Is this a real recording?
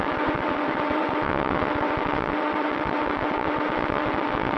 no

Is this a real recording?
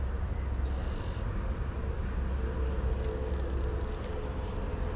yes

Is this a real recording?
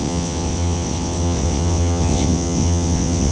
no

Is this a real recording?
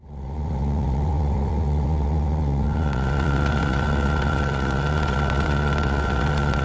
no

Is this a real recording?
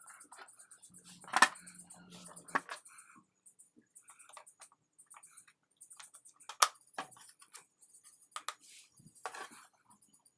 yes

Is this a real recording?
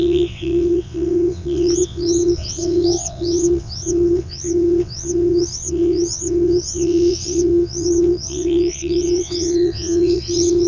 no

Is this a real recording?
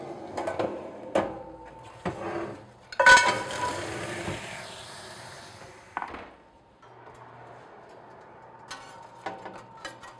yes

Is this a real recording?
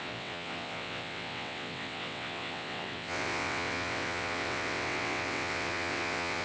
no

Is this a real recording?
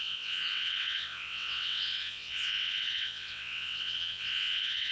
no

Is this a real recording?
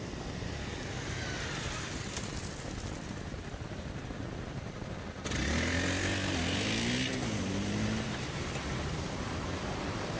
yes